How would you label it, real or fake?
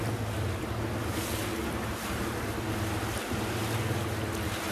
real